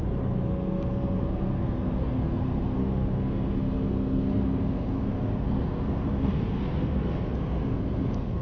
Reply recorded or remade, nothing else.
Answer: remade